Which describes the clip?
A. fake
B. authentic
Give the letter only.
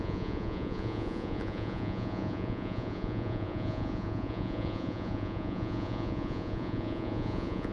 A